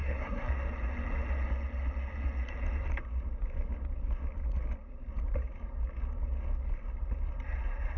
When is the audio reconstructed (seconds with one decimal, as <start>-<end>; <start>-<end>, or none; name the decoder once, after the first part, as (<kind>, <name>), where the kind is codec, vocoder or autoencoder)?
0.0-0.5 (codec, SNAC)